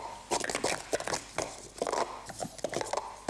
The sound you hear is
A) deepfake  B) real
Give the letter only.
B